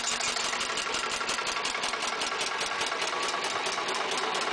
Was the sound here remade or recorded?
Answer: recorded